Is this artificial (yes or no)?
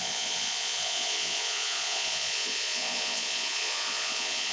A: yes